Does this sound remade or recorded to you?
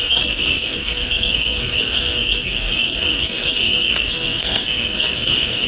remade